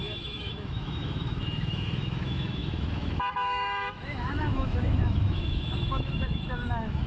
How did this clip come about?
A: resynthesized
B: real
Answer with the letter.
A